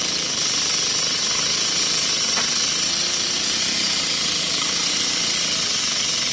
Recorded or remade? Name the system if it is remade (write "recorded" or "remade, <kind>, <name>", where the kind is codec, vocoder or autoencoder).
recorded